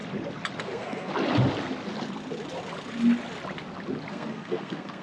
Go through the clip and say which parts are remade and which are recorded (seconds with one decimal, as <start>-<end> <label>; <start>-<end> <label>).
0.0-0.6 recorded; 0.6-1.1 remade; 1.1-4.1 recorded; 4.1-5.0 remade